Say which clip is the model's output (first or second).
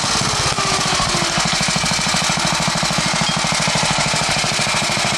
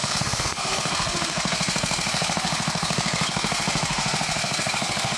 second